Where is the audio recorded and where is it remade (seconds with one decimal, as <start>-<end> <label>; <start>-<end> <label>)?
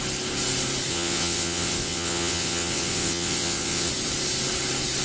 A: 0.0-0.9 recorded; 0.9-3.9 remade; 3.9-5.0 recorded